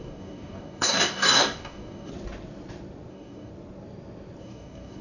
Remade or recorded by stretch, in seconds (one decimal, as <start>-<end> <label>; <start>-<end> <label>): 0.0-2.1 remade; 2.1-3.1 recorded; 3.1-3.5 remade; 3.5-4.4 recorded; 4.4-5.0 remade